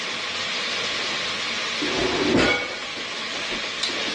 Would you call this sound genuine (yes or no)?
yes